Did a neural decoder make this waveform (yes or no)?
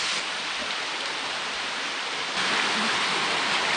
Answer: no